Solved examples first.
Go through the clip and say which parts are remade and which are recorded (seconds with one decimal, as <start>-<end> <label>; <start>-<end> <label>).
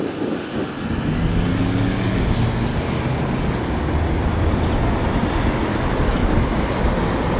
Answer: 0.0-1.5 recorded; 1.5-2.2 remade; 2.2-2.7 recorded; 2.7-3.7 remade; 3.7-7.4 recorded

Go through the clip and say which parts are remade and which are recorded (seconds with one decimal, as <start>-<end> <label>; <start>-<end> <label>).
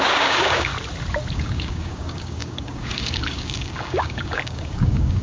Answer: 0.0-0.7 remade; 0.7-1.3 recorded; 1.3-5.2 remade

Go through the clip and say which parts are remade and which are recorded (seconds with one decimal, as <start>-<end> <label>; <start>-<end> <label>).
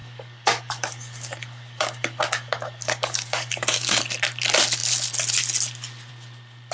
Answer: 0.0-4.0 remade; 4.0-6.7 recorded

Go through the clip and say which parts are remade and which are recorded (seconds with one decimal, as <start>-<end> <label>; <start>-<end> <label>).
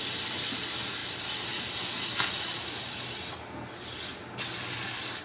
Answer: 0.0-5.2 recorded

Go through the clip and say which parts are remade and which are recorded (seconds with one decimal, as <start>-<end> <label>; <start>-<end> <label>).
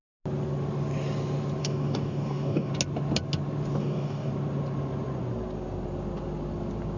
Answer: 0.0-1.6 recorded; 1.6-2.7 remade; 2.7-3.8 recorded; 3.8-4.3 remade; 4.3-7.0 recorded